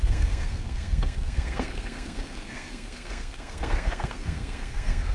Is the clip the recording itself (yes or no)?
no